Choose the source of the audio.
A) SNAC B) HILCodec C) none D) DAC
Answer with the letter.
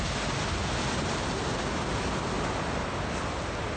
C